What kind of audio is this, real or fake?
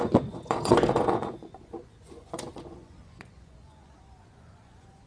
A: fake